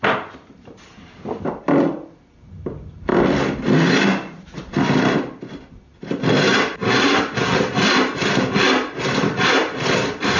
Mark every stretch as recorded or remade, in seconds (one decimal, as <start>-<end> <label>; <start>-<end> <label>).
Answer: 0.0-3.1 remade; 3.1-4.4 recorded; 4.4-6.8 remade; 6.8-8.5 recorded; 8.5-10.4 remade